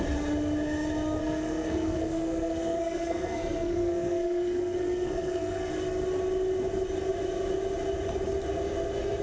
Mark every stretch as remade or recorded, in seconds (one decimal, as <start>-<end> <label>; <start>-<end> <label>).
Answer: 0.0-1.2 recorded; 1.2-5.7 remade; 5.7-9.2 recorded